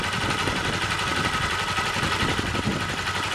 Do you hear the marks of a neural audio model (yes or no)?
no